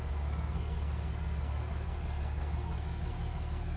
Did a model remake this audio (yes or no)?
yes